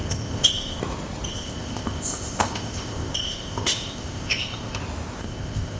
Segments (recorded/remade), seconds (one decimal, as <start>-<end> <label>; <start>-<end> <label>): 0.0-0.8 remade; 0.8-1.3 recorded; 1.3-4.8 remade; 4.8-5.2 recorded; 5.2-5.8 remade